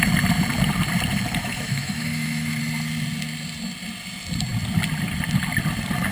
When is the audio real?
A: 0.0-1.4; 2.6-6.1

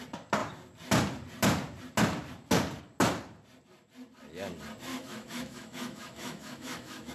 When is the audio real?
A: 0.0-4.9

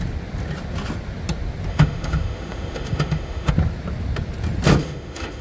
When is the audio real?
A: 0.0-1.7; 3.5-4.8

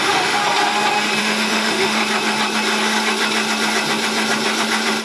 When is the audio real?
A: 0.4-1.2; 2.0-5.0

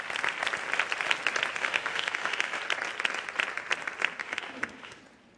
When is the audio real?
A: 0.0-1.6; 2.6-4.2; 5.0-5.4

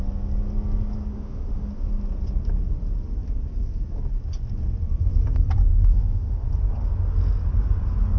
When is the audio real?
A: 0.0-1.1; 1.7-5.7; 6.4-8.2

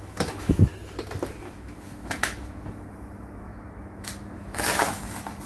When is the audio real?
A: 0.7-1.4